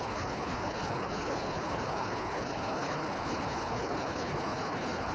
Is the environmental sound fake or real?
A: fake